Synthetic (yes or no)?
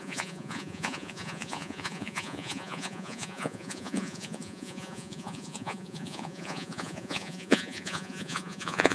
yes